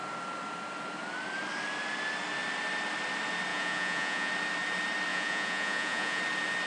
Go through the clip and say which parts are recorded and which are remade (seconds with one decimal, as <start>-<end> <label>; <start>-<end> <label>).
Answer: 0.0-3.5 recorded; 3.5-4.3 remade; 4.3-5.1 recorded; 5.1-6.2 remade; 6.2-6.7 recorded